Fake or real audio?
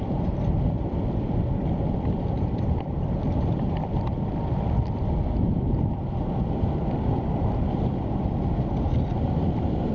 real